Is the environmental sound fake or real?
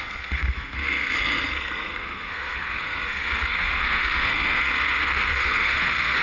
fake